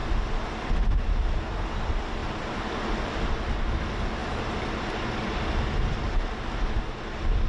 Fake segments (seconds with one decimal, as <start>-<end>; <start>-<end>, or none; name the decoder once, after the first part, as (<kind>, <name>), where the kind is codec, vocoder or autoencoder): none